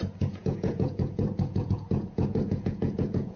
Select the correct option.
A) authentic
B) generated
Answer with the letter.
B